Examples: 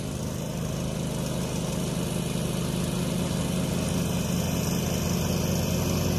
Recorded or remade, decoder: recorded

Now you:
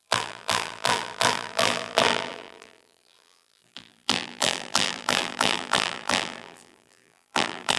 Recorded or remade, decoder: remade, vocoder, BigVGAN v2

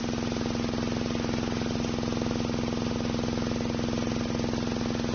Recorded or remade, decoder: recorded